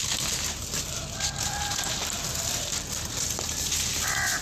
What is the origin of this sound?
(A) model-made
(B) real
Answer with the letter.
B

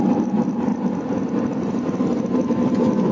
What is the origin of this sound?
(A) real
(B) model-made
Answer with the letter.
A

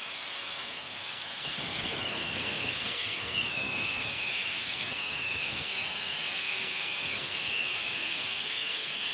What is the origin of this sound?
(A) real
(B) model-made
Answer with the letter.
B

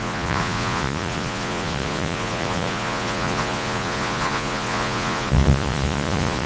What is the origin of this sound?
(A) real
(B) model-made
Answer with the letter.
B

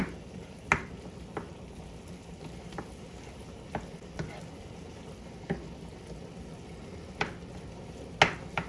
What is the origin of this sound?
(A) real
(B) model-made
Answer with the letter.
A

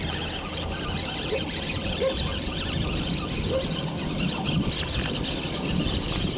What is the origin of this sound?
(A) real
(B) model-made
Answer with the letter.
A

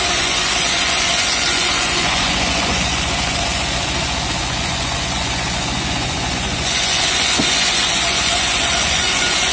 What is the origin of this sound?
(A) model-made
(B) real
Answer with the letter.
A